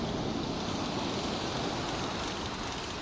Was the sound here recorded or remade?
recorded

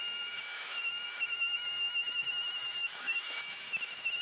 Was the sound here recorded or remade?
remade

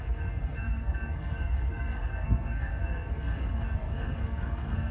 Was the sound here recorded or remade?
remade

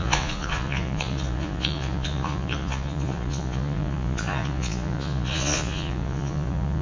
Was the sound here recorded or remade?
remade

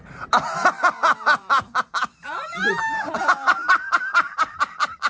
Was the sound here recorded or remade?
remade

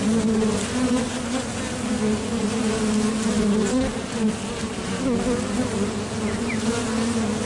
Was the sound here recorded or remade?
recorded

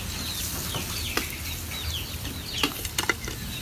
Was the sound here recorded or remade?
recorded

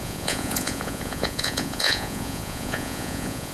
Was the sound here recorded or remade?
remade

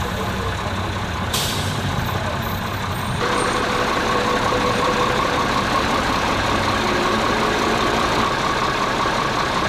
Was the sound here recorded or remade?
remade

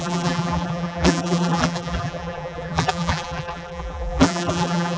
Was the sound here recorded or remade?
remade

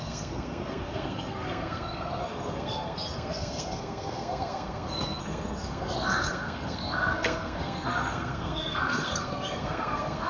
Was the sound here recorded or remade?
remade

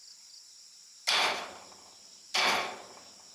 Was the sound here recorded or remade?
recorded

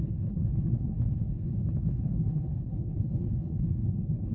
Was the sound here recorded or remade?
remade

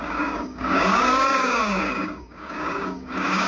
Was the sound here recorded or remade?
remade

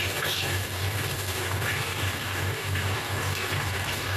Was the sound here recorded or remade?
remade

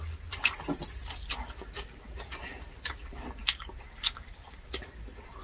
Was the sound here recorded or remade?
recorded